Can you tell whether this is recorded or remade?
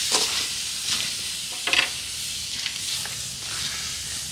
recorded